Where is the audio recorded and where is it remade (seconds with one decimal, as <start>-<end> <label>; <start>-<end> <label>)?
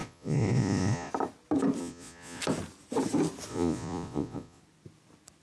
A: 0.0-1.1 remade; 1.1-1.8 recorded; 1.8-2.4 remade; 2.4-3.5 recorded; 3.5-4.6 remade; 4.6-5.4 recorded